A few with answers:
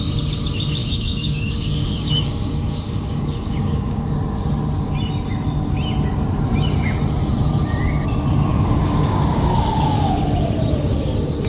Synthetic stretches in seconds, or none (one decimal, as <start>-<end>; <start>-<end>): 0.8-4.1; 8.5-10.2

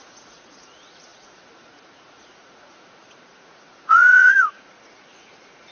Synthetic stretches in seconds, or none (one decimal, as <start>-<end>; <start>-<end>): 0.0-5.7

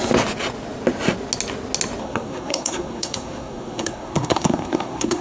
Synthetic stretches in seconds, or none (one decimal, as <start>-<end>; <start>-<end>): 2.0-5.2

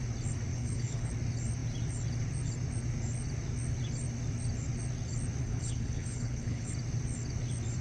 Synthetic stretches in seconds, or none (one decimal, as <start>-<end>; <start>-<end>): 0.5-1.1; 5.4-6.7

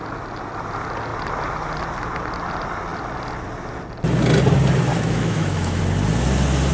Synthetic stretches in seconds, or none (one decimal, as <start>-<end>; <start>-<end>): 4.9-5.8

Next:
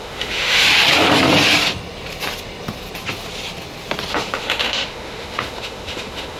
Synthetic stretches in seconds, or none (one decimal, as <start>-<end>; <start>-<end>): 0.0-0.7; 4.1-6.4